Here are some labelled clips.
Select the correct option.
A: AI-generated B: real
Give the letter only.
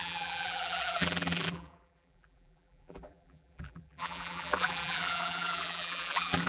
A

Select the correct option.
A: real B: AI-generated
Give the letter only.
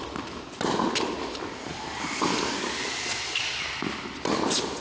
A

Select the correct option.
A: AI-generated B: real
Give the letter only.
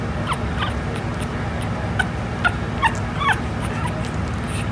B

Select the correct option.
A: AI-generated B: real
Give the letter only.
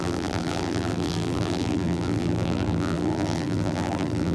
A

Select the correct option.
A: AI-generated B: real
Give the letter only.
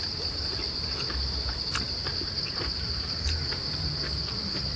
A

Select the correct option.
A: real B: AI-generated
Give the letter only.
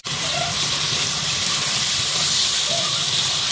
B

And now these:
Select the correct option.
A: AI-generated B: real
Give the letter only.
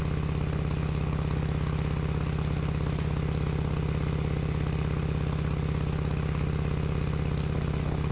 B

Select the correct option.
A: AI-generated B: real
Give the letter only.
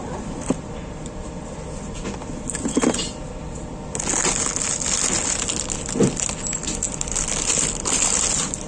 B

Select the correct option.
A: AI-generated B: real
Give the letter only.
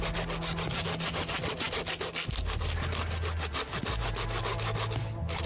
B